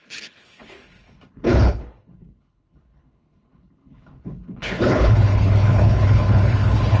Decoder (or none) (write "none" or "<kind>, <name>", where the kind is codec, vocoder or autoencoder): codec, HILCodec